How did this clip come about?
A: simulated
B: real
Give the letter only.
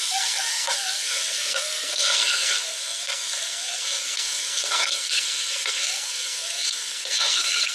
A